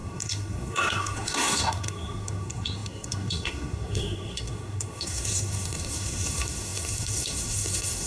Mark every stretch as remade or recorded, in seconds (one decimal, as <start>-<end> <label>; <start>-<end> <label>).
0.0-8.1 remade